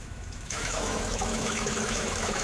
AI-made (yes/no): yes